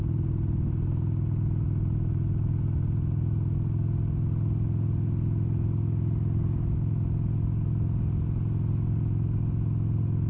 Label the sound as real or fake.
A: real